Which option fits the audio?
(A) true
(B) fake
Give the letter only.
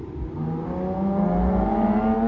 A